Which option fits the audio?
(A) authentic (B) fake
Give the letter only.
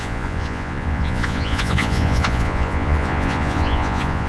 B